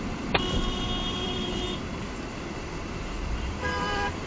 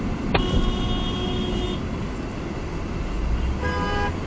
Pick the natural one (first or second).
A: second